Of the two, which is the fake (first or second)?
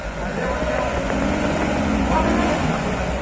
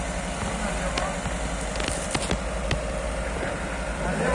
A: first